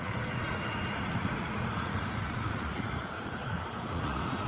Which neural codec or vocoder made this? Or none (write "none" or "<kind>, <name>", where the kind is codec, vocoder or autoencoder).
vocoder, Vocos